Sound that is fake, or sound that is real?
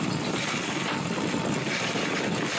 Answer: real